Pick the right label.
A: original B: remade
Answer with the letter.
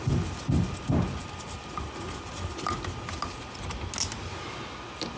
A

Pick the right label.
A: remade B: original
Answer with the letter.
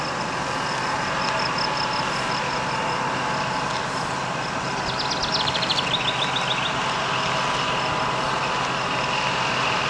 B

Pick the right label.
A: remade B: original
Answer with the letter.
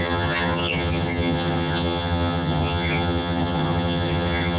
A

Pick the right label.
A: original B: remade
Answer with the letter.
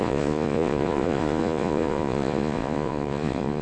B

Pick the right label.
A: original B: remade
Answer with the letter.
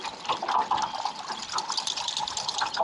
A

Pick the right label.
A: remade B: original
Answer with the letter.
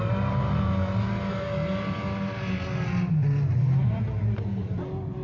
B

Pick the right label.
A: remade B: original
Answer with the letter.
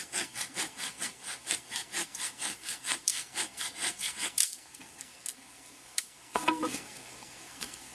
A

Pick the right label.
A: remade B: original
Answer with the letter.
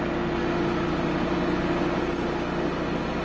B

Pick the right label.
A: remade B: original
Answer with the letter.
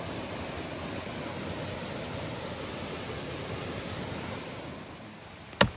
B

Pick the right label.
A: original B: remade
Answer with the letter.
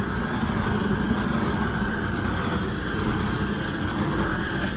A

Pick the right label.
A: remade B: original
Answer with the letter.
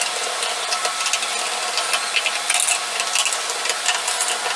B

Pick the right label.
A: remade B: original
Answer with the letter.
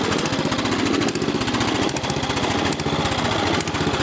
B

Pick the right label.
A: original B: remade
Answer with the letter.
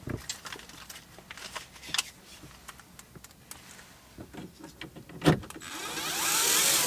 A